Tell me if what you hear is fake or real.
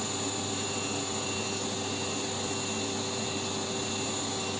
real